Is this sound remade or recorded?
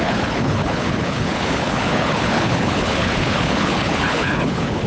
remade